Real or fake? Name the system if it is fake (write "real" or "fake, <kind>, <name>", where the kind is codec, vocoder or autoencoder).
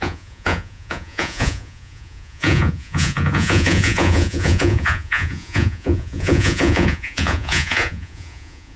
fake, vocoder, Vocos